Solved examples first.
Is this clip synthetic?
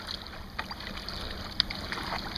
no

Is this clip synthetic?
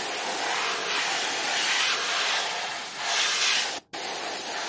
no